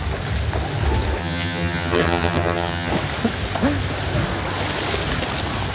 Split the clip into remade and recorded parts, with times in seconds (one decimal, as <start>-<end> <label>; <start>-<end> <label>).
0.0-1.2 recorded; 1.2-2.9 remade; 2.9-5.7 recorded

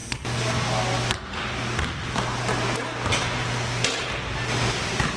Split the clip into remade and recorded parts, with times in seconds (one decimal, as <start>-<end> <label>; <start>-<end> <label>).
0.0-5.2 recorded

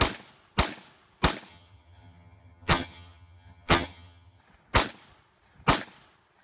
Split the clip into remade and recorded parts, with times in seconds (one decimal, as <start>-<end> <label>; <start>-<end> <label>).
0.0-1.5 recorded; 1.5-4.4 remade; 4.4-6.4 recorded

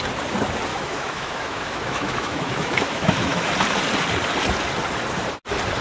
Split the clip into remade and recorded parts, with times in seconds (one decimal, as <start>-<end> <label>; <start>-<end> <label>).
0.0-0.7 recorded; 0.7-3.5 remade; 3.5-5.8 recorded

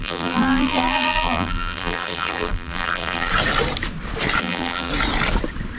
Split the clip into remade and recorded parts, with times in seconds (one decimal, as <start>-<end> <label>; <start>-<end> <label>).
0.0-3.3 remade; 3.3-4.4 recorded; 4.4-4.9 remade; 4.9-5.8 recorded

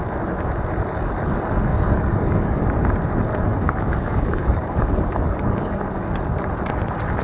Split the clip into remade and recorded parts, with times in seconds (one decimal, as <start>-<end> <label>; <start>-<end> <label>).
0.0-1.7 recorded; 1.7-2.6 remade; 2.6-3.3 recorded; 3.3-6.2 remade; 6.2-7.2 recorded